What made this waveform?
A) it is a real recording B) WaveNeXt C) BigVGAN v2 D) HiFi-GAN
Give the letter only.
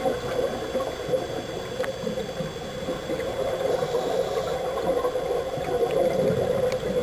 A